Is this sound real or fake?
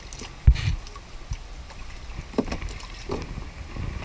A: real